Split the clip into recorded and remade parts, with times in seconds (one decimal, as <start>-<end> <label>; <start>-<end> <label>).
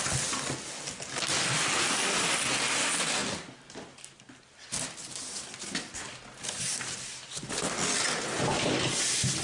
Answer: 0.0-9.4 recorded